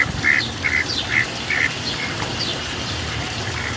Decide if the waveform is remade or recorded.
recorded